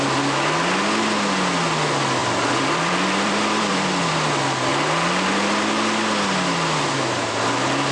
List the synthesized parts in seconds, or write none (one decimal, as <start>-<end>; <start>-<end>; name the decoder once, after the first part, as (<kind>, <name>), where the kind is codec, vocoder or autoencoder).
2.2-4.1 (vocoder, BigVGAN v2)